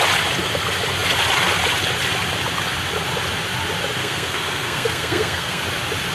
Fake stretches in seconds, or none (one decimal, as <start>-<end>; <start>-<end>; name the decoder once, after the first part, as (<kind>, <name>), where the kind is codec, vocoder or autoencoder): 4.0-5.6 (codec, SNAC)